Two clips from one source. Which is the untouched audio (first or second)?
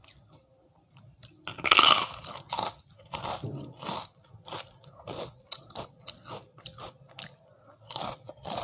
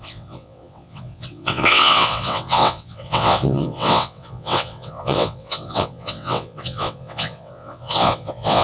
first